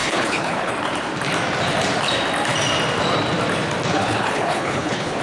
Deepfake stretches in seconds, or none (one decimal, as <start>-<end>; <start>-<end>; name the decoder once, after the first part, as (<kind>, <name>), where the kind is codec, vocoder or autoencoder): 0.0-0.7 (codec, HILCodec); 3.9-5.2